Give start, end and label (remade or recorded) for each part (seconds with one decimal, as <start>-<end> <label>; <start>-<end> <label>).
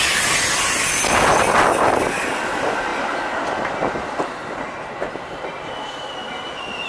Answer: 0.0-6.9 recorded